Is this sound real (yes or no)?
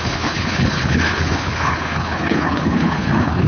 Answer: no